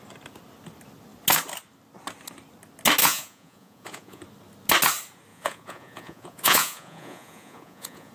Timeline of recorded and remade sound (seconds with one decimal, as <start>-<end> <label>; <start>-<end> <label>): 0.0-3.0 recorded; 3.0-4.2 remade; 4.2-5.3 recorded; 5.3-8.1 remade